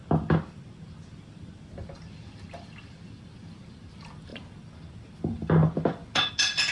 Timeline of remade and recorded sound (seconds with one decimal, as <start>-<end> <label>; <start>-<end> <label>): 0.0-6.7 recorded